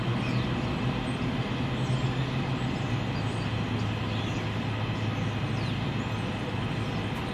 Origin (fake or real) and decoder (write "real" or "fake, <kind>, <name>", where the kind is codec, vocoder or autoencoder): real